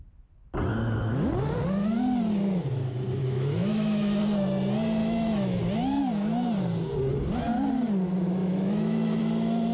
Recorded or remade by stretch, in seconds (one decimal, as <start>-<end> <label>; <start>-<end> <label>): 0.0-0.7 recorded; 0.7-1.3 remade; 1.3-3.2 recorded; 3.2-4.2 remade; 4.2-5.0 recorded; 5.0-5.6 remade; 5.6-8.4 recorded; 8.4-9.2 remade; 9.2-9.7 recorded